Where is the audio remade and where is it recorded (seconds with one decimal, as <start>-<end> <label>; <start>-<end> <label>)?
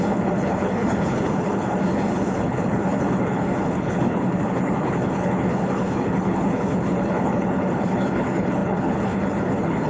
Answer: 0.0-9.9 remade